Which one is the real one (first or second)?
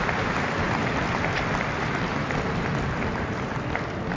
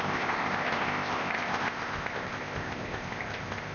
first